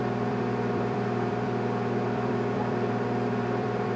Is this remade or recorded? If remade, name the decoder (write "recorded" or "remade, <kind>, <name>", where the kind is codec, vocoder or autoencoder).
remade, vocoder, BigVGAN v2